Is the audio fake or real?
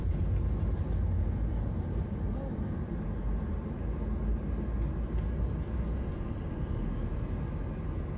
real